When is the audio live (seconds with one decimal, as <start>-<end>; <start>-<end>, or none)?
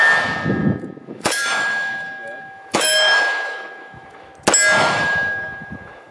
4.3-4.9